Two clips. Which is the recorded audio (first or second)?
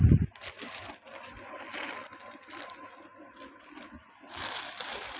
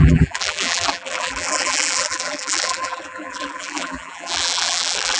first